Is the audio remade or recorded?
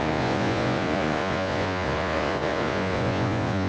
remade